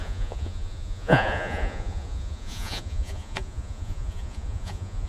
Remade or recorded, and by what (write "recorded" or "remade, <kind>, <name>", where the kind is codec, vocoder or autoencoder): remade, vocoder, Vocos